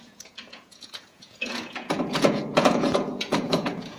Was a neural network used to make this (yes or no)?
yes